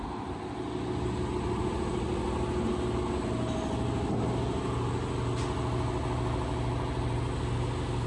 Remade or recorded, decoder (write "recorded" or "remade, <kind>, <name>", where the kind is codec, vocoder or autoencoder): recorded